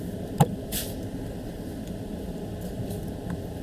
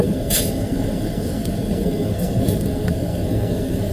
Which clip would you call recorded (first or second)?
first